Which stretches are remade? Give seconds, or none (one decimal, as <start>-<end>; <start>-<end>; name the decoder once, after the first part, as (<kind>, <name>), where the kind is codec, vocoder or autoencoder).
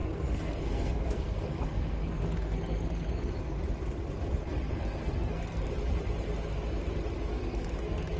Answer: 0.0-3.3 (codec, SNAC); 4.5-5.7; 7.3-8.2